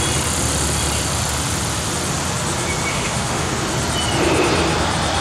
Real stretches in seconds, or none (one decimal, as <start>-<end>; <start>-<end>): 0.0-2.9; 3.5-5.2